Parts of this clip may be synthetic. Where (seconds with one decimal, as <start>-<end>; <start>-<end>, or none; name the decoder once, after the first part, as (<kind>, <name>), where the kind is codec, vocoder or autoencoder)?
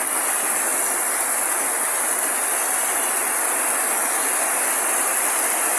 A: none